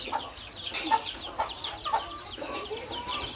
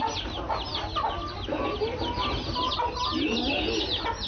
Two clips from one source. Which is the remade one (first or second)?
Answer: first